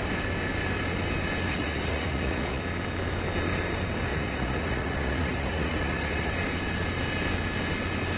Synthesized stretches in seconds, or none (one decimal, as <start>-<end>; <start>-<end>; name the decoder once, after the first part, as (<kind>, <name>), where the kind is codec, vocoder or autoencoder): 1.5-2.6 (vocoder, Vocos); 4.1-6.3